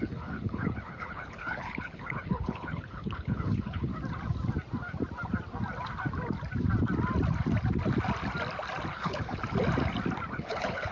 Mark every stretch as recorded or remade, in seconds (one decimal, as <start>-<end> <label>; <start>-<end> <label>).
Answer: 0.0-3.9 remade; 3.9-8.9 recorded; 8.9-9.4 remade; 9.4-10.3 recorded; 10.3-10.9 remade